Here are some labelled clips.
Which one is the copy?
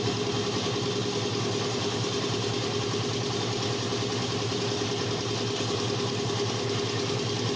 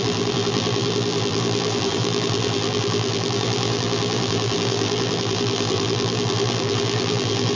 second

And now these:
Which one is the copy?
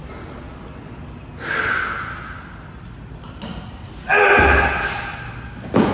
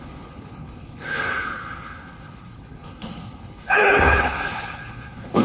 second